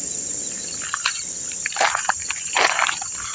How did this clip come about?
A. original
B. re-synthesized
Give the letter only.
A